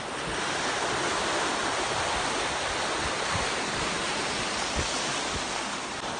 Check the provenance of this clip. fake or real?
real